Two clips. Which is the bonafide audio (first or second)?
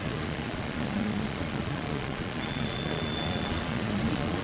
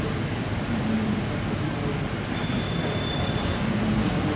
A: second